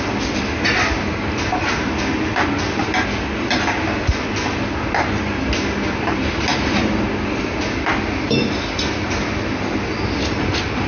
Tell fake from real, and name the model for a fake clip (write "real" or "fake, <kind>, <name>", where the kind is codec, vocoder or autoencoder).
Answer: real